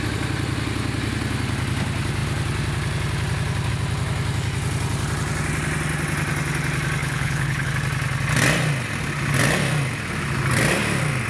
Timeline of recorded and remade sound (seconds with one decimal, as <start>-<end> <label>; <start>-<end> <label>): 0.0-7.0 recorded; 7.0-7.7 remade; 7.7-11.3 recorded